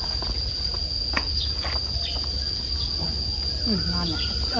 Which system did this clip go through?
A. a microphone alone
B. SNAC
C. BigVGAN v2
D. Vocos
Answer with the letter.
A